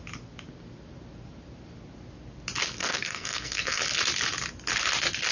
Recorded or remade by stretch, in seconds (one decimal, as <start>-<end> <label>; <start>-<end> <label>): 0.0-2.8 recorded; 2.8-3.8 remade; 3.8-5.3 recorded